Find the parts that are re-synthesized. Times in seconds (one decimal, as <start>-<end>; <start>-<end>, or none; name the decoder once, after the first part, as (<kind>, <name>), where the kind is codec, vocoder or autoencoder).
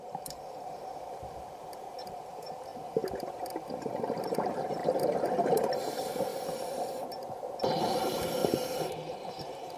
0.0-2.7 (vocoder, BigVGAN v2); 4.3-6.3; 7.0-8.4; 9.3-9.8